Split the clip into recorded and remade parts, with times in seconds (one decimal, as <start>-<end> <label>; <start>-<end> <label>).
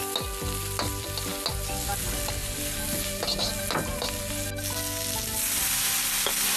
0.0-6.6 recorded